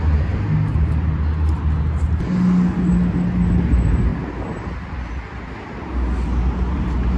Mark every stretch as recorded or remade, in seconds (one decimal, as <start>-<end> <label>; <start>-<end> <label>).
0.0-7.2 recorded